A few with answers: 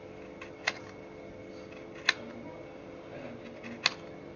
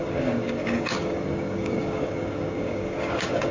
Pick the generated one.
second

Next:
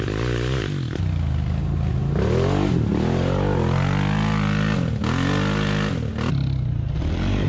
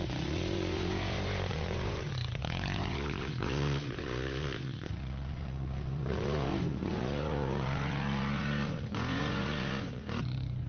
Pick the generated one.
second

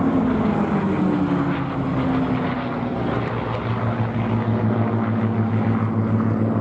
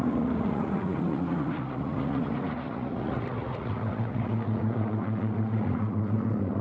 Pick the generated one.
second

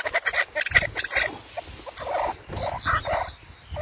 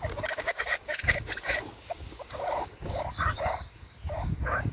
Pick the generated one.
second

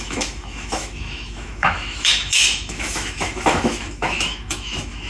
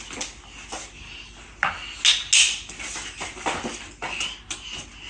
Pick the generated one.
first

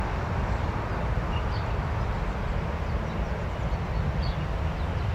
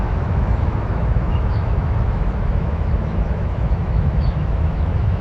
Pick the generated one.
second